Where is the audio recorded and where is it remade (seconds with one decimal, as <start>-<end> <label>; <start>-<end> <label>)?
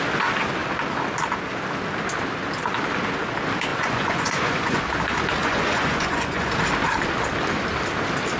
0.0-3.7 recorded; 3.7-4.8 remade; 4.8-5.4 recorded; 5.4-6.5 remade; 6.5-8.4 recorded